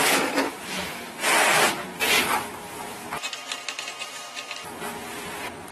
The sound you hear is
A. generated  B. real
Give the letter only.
B